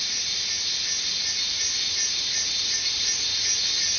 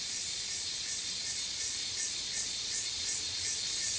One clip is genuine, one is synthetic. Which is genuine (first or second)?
first